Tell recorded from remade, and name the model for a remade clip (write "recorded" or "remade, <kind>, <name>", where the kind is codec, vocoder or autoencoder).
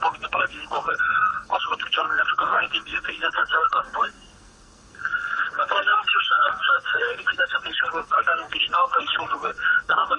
remade, codec, SNAC